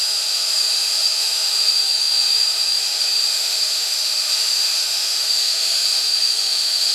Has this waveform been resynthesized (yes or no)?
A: yes